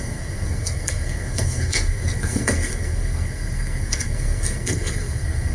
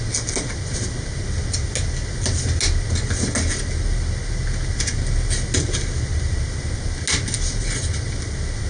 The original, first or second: second